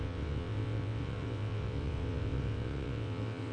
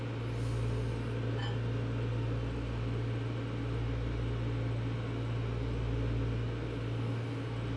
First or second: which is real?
second